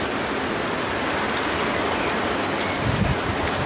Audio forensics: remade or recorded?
recorded